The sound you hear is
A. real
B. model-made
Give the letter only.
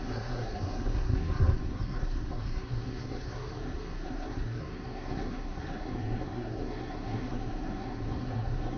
B